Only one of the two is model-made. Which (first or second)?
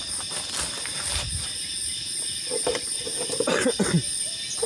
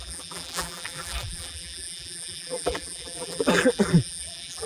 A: second